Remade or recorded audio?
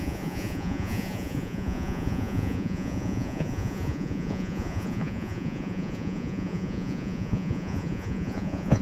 remade